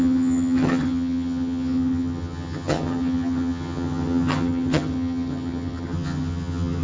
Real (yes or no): no